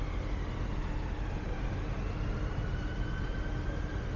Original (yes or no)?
yes